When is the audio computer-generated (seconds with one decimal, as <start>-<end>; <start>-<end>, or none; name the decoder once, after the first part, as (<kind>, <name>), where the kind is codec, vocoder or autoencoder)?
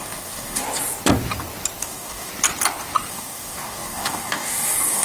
0.0-0.6 (codec, DAC); 1.8-2.3; 3.1-5.0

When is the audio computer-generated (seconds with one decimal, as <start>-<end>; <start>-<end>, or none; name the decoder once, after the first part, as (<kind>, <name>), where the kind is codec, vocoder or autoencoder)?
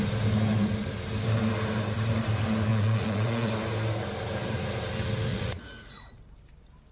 2.7-3.5 (vocoder, Vocos); 5.3-6.1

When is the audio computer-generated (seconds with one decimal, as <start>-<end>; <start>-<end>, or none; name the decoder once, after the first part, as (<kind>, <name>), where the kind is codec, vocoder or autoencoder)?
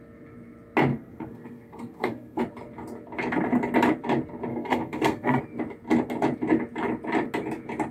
0.9-2.4 (codec, SNAC); 4.5-5.4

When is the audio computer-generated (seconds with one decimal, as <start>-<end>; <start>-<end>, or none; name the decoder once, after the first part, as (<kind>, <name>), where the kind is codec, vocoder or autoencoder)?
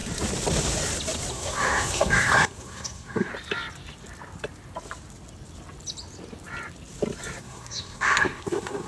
1.3-3.3 (codec, SNAC); 7.4-8.9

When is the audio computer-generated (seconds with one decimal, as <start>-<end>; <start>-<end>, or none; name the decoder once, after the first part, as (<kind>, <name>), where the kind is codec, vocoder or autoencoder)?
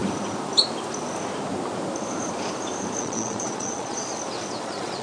3.0-4.1 (vocoder, Vocos); 4.6-5.0